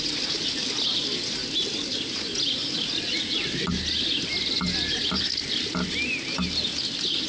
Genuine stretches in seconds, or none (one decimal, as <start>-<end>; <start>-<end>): 0.0-7.3